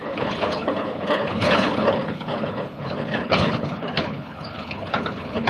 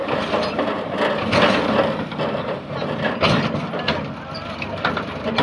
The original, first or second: second